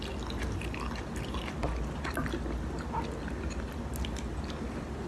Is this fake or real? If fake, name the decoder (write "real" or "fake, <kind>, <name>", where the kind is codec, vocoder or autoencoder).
real